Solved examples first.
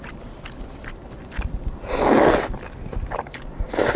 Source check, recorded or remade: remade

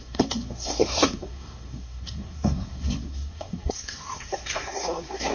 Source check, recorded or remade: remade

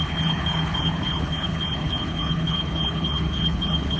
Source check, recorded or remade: remade